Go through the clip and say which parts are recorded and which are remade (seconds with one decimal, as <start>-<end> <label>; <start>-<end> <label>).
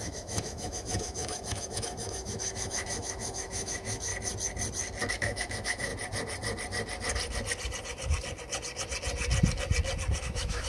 0.0-4.1 remade; 4.1-5.1 recorded; 5.1-5.9 remade; 5.9-10.2 recorded; 10.2-10.7 remade